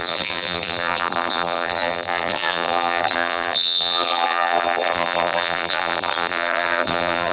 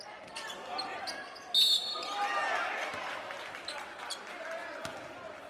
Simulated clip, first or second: first